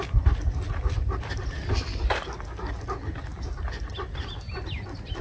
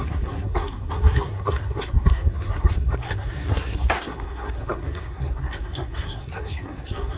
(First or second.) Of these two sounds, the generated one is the second